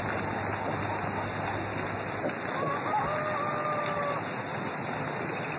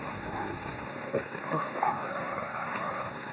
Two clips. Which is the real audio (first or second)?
first